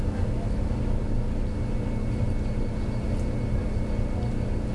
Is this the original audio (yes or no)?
yes